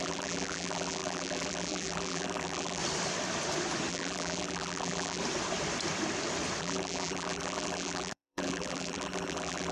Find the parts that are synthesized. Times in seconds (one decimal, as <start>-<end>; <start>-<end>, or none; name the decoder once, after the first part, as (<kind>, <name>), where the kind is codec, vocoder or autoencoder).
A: 0.0-2.8 (vocoder, BigVGAN v2); 3.9-5.2; 6.6-9.7